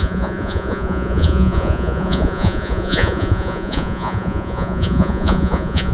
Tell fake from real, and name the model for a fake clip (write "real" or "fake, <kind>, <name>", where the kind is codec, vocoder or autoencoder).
fake, vocoder, Vocos